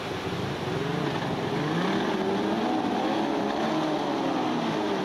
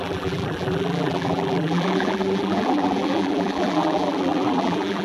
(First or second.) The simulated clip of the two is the second